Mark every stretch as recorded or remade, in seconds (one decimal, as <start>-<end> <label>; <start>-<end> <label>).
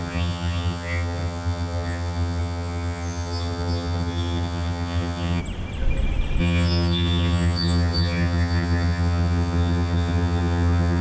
0.0-5.4 remade; 5.4-6.4 recorded; 6.4-11.0 remade